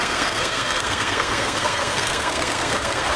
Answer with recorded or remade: remade